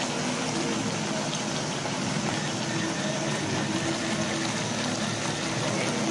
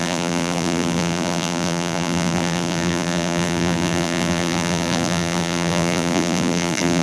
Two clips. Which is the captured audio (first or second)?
first